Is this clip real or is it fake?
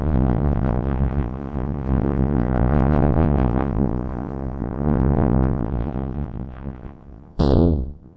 fake